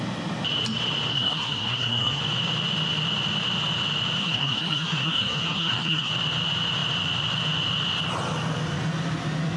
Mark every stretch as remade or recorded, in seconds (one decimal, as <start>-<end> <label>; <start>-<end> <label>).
0.0-1.1 recorded; 1.1-2.2 remade; 2.2-4.2 recorded; 4.2-6.1 remade; 6.1-9.6 recorded